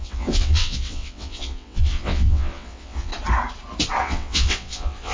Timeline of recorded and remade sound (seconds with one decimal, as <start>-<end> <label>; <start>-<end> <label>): 0.0-3.1 remade; 3.1-4.0 recorded; 4.0-5.1 remade